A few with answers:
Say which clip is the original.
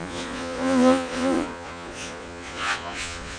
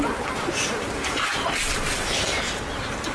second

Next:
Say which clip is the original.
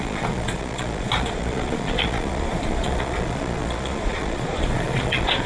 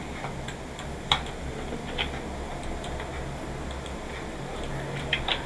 second